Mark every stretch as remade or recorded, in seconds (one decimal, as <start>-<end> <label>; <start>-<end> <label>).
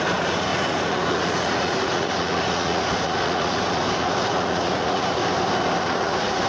0.0-5.2 remade; 5.2-5.8 recorded; 5.8-6.5 remade